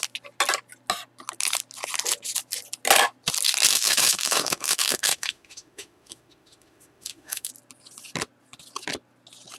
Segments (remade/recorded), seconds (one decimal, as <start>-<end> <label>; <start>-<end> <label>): 0.0-3.7 recorded; 3.7-7.5 remade; 7.5-9.6 recorded